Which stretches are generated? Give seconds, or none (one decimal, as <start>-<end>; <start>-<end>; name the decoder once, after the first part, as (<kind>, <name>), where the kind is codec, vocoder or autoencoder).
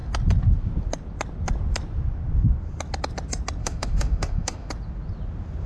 3.6-4.7 (autoencoder, DAC-VAE)